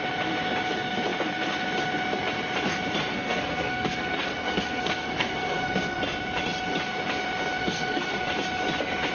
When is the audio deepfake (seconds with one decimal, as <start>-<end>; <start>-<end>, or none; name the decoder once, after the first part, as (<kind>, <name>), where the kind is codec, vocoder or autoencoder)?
3.1-6.0 (codec, SNAC); 7.6-8.3